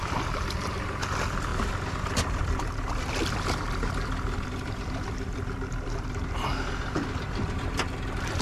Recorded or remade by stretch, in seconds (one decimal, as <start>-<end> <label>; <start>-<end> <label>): 0.0-8.4 remade